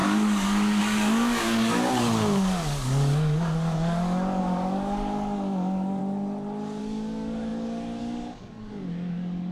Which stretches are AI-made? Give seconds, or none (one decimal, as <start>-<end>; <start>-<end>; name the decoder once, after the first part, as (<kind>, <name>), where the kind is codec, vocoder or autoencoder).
0.0-6.0 (codec, DAC); 6.8-9.5